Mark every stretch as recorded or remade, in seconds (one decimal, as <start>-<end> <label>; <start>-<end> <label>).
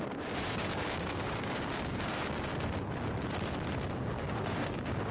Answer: 0.0-2.5 remade; 2.5-4.0 recorded; 4.0-5.1 remade